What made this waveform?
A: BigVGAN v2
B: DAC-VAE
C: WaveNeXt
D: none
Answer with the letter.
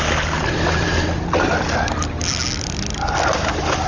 D